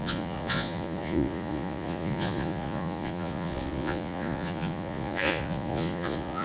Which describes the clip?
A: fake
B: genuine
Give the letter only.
A